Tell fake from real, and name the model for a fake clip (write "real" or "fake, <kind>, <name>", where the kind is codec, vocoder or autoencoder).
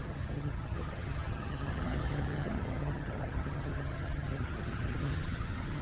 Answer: fake, vocoder, HiFi-GAN